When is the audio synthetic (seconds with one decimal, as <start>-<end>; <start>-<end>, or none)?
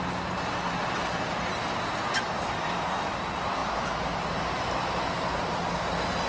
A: none